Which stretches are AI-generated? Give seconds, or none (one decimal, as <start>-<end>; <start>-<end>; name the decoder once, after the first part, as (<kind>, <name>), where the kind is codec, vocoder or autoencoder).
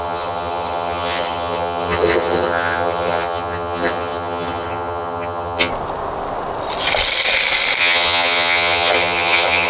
0.0-5.7 (vocoder, HiFi-GAN); 7.8-9.7